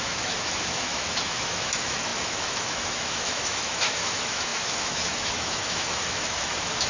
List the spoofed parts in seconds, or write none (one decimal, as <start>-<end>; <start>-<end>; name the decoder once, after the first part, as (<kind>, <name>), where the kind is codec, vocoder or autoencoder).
0.0-6.9 (autoencoder, DAC-VAE)